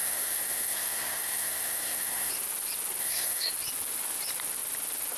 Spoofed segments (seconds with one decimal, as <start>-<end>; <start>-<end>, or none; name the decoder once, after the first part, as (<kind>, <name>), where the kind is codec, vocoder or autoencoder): 0.0-2.3 (codec, SNAC); 3.0-3.5